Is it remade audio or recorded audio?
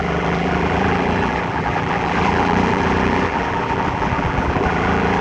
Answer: remade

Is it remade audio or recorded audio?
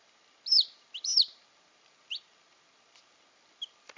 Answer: recorded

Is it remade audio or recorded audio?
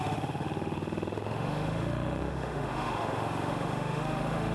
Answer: remade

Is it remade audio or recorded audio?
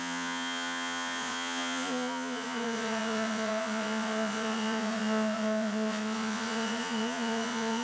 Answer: remade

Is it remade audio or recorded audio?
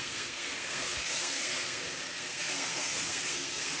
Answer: remade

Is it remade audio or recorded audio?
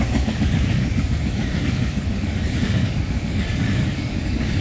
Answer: remade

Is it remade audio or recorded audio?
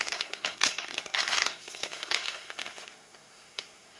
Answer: remade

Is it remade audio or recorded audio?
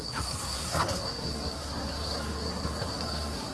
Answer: remade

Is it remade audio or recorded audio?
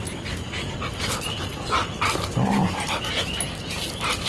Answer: recorded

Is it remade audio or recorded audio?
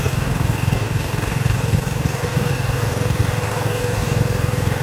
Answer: remade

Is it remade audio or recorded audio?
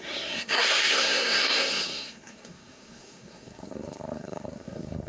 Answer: remade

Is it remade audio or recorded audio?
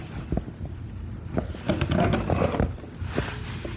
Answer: recorded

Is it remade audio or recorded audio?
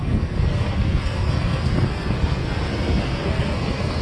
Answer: remade